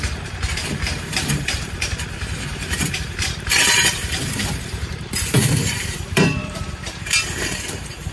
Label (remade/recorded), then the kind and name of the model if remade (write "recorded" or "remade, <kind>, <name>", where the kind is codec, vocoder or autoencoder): remade, vocoder, BigVGAN v2